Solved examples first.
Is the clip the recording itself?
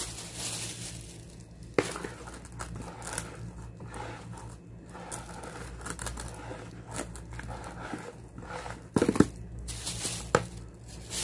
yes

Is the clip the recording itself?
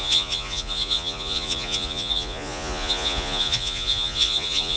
no